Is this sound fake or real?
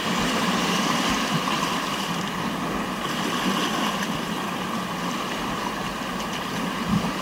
real